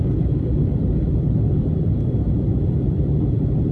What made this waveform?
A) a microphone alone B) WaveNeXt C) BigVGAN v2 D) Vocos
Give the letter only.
C